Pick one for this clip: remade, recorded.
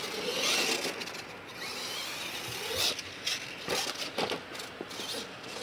recorded